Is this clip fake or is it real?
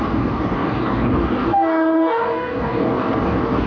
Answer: fake